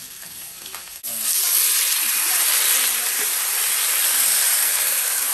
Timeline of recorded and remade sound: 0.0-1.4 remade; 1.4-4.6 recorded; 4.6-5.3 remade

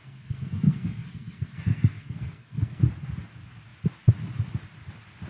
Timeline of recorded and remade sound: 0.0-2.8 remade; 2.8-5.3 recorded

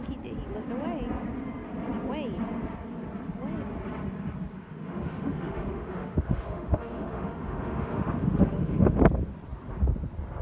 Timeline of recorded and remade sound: 0.0-4.5 recorded; 4.5-9.0 remade; 9.0-10.4 recorded